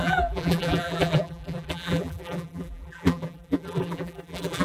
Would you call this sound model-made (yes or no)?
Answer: yes